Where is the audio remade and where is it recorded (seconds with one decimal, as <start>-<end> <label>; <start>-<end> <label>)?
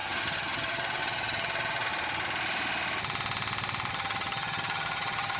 0.0-1.9 remade; 1.9-3.9 recorded; 3.9-5.4 remade